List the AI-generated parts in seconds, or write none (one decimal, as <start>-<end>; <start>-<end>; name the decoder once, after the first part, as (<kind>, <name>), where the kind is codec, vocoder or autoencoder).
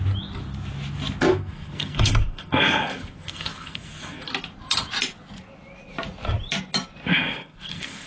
1.3-4.2 (codec, SNAC); 7.1-8.1